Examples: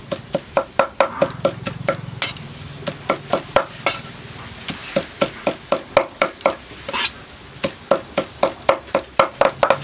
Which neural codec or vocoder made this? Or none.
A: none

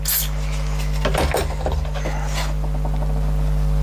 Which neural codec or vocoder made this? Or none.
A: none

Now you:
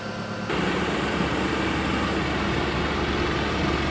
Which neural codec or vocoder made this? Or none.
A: none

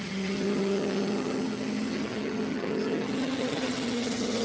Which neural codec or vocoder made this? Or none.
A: vocoder, HiFi-GAN